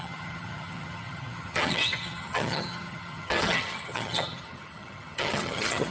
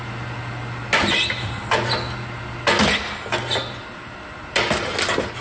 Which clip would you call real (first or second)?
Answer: second